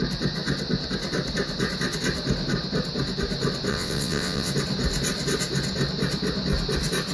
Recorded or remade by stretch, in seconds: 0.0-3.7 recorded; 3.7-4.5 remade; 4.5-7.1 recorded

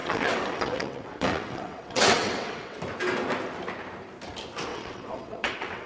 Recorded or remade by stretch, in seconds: 0.0-2.8 remade; 2.8-4.7 recorded; 4.7-5.9 remade

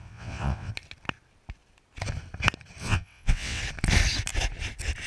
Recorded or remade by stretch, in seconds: 0.0-0.7 remade; 0.7-2.8 recorded; 2.8-3.6 remade; 3.6-5.1 recorded

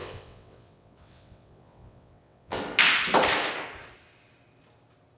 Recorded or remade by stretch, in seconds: 0.0-2.6 remade; 2.6-5.2 recorded

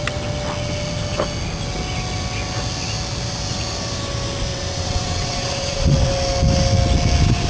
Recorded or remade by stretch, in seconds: 0.0-4.5 recorded; 4.5-6.1 remade; 6.1-7.5 recorded